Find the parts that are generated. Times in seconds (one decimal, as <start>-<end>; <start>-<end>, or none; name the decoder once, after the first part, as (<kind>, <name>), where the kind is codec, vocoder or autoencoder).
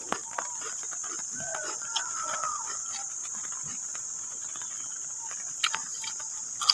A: 1.5-2.7 (vocoder, Vocos); 3.9-4.7